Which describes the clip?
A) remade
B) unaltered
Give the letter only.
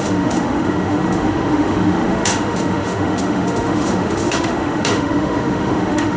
A